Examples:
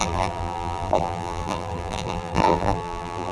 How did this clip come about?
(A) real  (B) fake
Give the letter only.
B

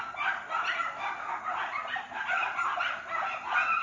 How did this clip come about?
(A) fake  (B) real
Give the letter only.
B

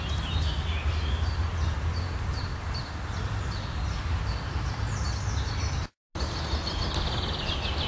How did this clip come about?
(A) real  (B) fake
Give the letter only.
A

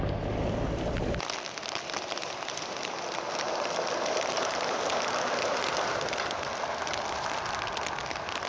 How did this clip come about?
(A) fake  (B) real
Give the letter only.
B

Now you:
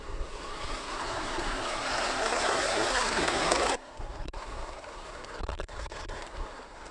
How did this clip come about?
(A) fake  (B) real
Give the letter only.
A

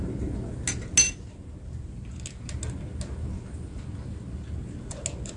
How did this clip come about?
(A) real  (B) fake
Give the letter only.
A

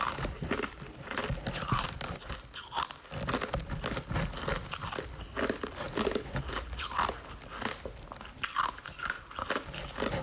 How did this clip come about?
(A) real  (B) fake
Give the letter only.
A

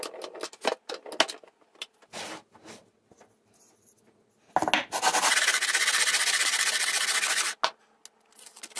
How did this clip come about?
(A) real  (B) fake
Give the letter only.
A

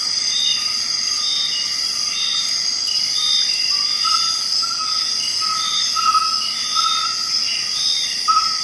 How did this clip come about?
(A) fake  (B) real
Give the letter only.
B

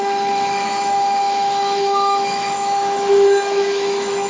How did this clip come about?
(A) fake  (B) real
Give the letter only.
A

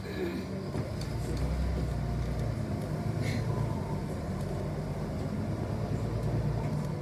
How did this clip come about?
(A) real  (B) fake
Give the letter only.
A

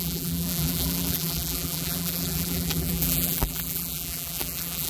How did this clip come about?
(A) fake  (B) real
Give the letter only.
A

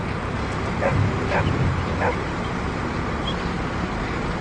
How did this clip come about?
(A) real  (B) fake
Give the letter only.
A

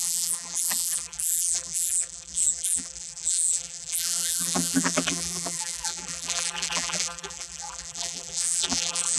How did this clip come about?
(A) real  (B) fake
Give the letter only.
B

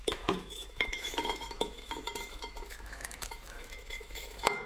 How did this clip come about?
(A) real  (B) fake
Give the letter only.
B